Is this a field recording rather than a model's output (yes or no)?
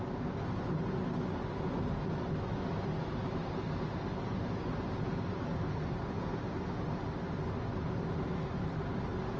yes